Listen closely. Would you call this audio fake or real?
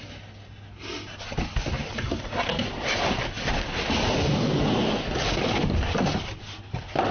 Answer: real